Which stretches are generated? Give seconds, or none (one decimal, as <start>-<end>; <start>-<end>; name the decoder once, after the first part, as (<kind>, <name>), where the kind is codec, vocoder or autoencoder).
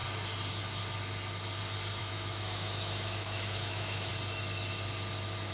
2.0-4.1 (autoencoder, DAC-VAE)